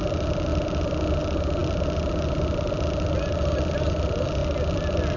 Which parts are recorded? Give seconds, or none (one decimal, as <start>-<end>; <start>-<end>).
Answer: 0.0-5.2